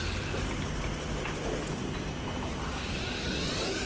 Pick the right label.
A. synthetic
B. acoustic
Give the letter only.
B